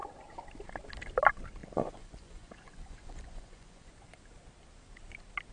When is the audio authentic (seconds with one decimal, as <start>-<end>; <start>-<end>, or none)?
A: 0.0-1.6; 3.9-5.5